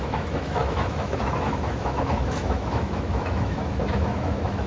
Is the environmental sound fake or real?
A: fake